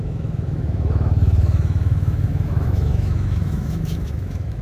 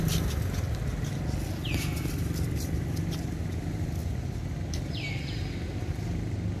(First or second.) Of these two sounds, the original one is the second